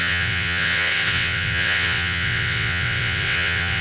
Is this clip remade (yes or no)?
yes